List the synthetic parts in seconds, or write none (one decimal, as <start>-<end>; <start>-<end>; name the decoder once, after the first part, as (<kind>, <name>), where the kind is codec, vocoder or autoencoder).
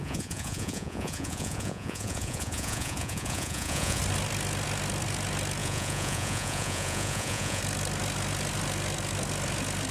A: 0.0-4.0 (vocoder, Vocos); 5.6-7.6